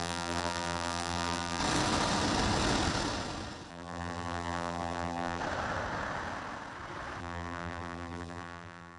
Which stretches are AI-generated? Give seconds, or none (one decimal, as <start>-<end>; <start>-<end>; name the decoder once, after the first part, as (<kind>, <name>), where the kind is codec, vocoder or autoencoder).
0.0-1.6 (vocoder, BigVGAN v2); 3.7-5.4; 7.2-9.0

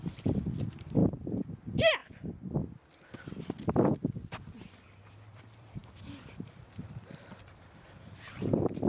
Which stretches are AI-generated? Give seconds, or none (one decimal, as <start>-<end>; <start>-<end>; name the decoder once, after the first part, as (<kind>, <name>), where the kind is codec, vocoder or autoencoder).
0.0-2.0 (vocoder, BigVGAN v2); 4.6-8.9

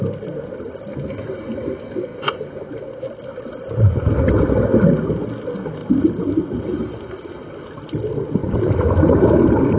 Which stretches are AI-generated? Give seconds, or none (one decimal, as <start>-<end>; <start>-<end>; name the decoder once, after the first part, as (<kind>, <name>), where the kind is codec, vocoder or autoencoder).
5.8-6.6 (vocoder, BigVGAN v2)

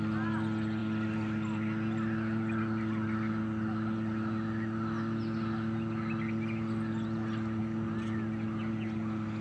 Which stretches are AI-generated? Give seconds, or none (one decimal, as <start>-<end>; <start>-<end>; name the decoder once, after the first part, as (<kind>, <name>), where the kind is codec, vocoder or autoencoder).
none

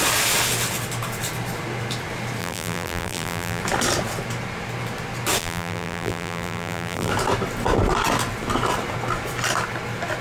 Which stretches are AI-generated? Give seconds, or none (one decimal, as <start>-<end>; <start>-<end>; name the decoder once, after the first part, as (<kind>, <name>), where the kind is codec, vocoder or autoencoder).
2.4-3.6 (vocoder, BigVGAN v2); 5.4-7.1

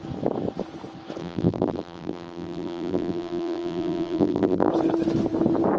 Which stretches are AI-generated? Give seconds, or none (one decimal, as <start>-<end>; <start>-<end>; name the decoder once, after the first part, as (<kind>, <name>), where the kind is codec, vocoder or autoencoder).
1.2-4.7 (vocoder, BigVGAN v2)

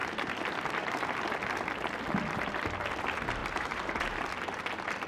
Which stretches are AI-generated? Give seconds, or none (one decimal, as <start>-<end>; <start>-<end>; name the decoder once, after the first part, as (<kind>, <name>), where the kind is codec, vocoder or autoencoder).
3.4-4.2 (vocoder, BigVGAN v2)

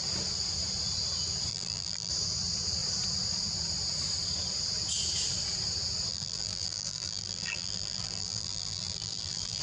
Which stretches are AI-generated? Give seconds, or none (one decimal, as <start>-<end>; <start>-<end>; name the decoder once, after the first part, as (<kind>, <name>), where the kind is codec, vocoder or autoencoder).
1.5-2.1 (vocoder, BigVGAN v2); 6.1-9.6